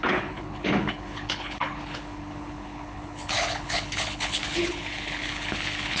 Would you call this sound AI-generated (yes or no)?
yes